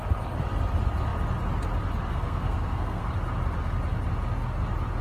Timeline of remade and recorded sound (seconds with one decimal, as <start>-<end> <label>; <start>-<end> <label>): 0.0-2.1 recorded; 2.1-3.0 remade; 3.0-5.0 recorded